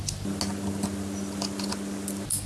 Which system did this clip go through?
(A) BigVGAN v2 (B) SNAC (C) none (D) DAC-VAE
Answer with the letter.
C